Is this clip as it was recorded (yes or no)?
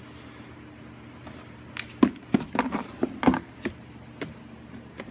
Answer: yes